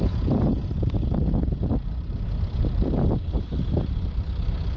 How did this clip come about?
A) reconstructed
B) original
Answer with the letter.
B